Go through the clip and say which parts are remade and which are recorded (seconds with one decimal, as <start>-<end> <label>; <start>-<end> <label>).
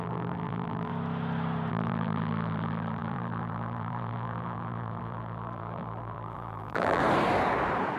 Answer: 0.0-0.9 remade; 0.9-1.7 recorded; 1.7-7.0 remade; 7.0-8.0 recorded